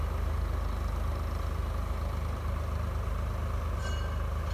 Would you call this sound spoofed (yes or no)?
no